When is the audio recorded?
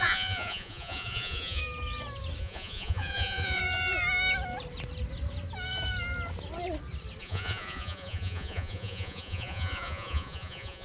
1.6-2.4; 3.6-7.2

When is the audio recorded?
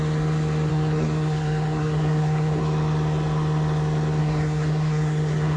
0.0-0.7; 2.6-4.2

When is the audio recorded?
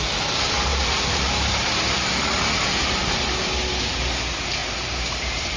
0.0-0.7; 2.2-4.6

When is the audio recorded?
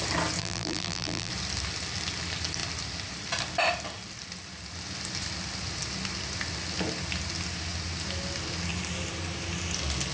0.0-0.4; 1.3-10.1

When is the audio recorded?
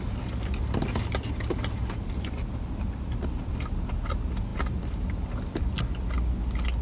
0.0-1.8; 3.5-4.5; 5.8-6.8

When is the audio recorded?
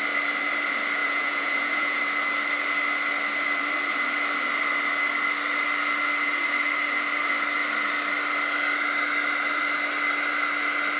0.0-1.0; 2.0-11.0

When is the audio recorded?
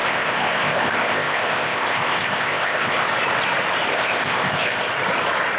3.0-3.9; 4.9-5.6